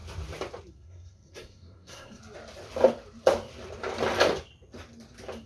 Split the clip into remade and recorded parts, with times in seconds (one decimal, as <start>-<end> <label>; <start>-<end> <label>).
0.0-0.7 recorded; 0.7-2.2 remade; 2.2-5.5 recorded